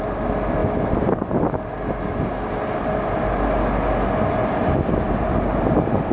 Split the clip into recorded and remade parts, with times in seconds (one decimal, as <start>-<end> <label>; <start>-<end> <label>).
0.0-6.1 recorded

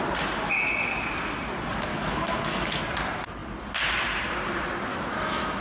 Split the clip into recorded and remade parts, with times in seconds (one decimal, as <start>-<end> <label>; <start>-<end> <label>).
0.0-1.9 recorded; 1.9-2.8 remade; 2.8-4.9 recorded; 4.9-5.6 remade

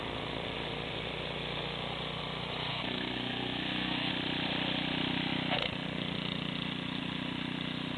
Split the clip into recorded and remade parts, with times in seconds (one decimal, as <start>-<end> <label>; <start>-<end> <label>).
0.0-2.7 recorded; 2.7-4.1 remade; 4.1-8.0 recorded

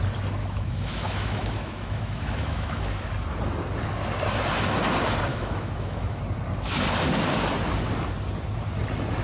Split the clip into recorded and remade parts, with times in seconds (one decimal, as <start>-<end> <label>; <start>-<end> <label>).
0.0-0.4 recorded; 0.4-3.1 remade; 3.1-5.3 recorded; 5.3-6.2 remade; 6.2-9.2 recorded